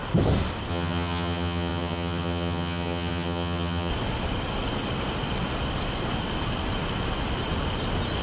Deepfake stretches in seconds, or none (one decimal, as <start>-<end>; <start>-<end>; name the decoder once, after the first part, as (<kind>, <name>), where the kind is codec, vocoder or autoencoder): 0.7-3.9 (vocoder, HiFi-GAN)